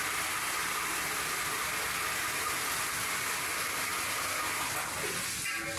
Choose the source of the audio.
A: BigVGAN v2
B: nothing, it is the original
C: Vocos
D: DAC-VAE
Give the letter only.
B